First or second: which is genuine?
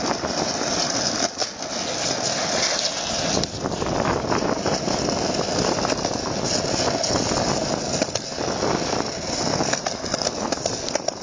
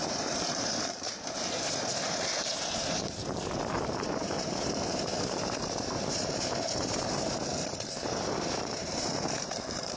first